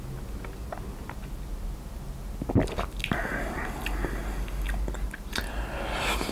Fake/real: real